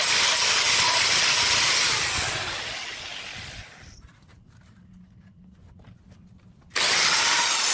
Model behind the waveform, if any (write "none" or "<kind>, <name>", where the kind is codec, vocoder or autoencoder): none